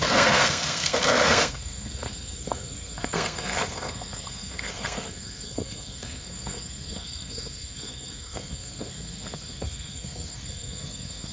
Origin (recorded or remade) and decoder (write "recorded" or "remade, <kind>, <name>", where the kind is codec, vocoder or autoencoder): remade, codec, SNAC